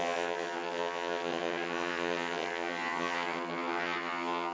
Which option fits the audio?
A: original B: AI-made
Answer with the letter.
B